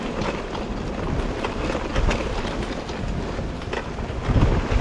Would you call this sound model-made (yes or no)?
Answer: no